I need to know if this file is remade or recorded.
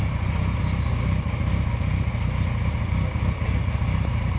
recorded